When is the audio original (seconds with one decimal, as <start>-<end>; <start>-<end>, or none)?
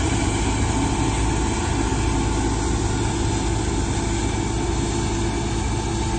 0.0-6.2